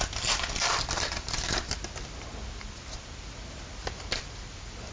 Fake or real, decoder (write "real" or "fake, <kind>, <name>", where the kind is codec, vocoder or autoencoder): real